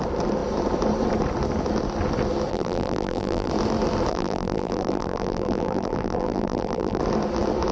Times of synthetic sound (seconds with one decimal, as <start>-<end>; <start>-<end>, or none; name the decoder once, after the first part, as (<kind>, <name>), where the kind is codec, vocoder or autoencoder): 2.5-3.5 (vocoder, BigVGAN v2); 4.1-7.0